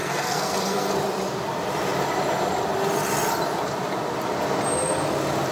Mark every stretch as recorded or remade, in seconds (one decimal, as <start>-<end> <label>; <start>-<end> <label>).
0.0-0.9 remade; 0.9-5.5 recorded